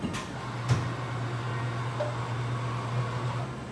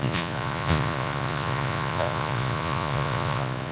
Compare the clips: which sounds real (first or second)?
first